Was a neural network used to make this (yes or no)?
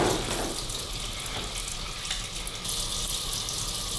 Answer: no